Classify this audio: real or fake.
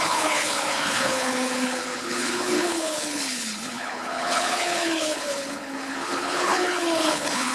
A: fake